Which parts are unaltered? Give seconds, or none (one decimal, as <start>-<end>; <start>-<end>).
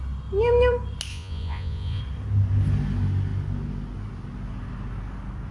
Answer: 0.0-1.1; 2.0-5.5